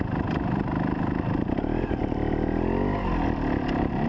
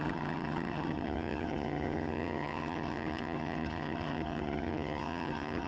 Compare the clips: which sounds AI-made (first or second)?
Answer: second